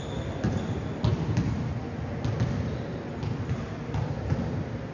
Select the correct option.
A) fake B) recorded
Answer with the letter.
B